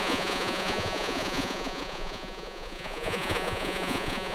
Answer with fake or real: fake